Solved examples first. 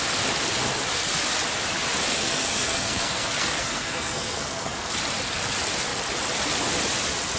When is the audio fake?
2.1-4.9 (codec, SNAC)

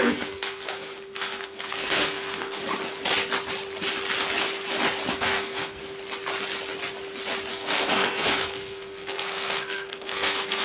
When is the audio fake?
0.0-2.6 (codec, SNAC); 5.1-5.8; 7.5-10.6

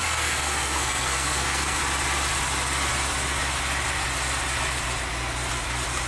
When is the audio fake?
0.0-1.8 (codec, SNAC)